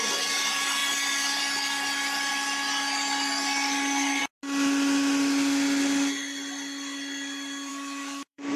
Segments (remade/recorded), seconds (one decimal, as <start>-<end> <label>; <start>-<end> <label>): 0.0-7.7 recorded; 7.7-8.6 remade